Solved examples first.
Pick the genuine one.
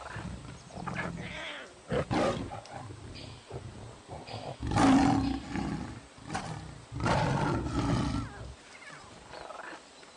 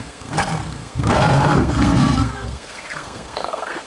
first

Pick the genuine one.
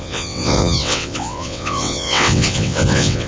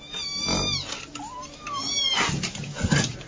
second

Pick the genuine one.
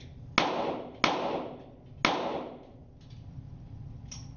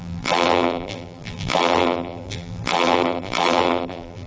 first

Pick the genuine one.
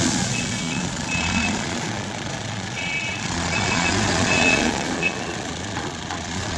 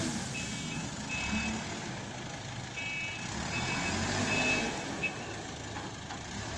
second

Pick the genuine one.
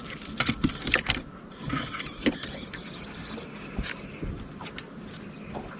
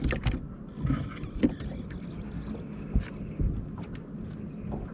second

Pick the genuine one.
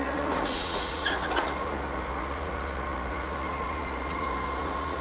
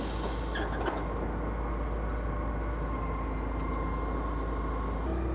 second